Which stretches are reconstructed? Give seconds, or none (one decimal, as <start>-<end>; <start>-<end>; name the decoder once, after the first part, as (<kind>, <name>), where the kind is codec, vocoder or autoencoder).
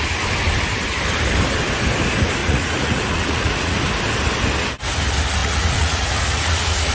2.4-3.8 (vocoder, Vocos); 5.4-6.9